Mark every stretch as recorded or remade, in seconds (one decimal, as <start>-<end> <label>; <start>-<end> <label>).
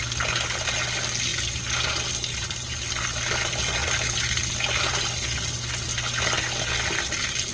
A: 0.0-7.5 recorded